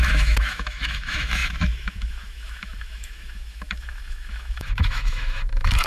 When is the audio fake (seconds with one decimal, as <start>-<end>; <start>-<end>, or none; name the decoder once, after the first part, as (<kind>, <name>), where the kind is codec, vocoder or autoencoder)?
0.0-5.9 (autoencoder, DAC-VAE)